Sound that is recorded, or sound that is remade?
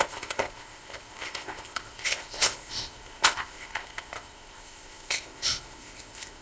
remade